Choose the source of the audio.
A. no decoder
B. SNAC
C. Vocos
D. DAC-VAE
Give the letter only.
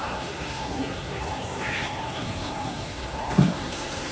B